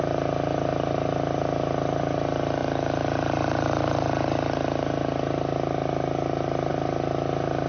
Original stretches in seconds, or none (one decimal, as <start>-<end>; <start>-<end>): 0.0-7.7